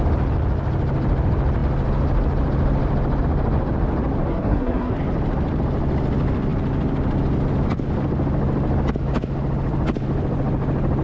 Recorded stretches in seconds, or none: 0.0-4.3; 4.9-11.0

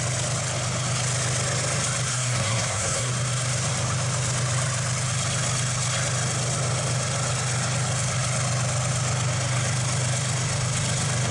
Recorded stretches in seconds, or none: 0.0-2.1; 3.1-11.3

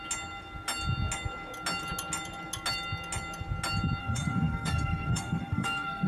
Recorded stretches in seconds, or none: 0.0-4.0

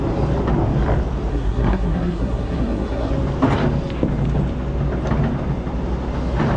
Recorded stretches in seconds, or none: 0.0-1.3; 3.1-6.6

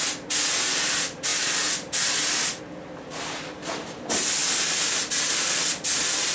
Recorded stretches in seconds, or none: 0.0-6.3

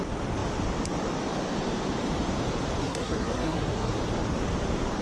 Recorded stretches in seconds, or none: 0.0-2.8; 3.9-5.0